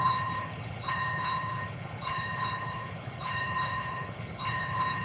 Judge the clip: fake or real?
fake